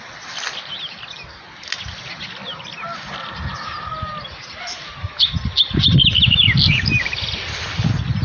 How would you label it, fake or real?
real